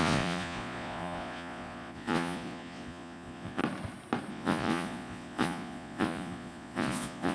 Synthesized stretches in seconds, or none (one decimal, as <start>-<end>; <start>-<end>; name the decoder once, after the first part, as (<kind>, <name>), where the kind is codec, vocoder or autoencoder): 0.0-3.6 (vocoder, Vocos); 4.3-7.3